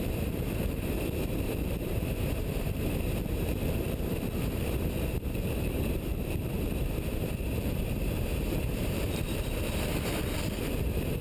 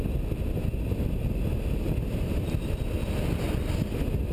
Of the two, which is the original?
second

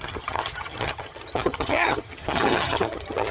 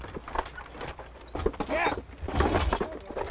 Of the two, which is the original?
second